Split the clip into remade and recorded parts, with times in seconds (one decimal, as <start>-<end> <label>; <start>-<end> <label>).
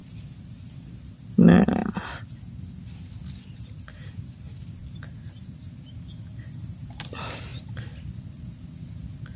0.0-0.6 remade; 0.6-7.5 recorded; 7.5-8.6 remade; 8.6-9.4 recorded